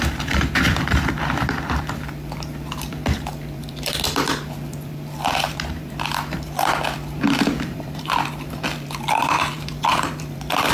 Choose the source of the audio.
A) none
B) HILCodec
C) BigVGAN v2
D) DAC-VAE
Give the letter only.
C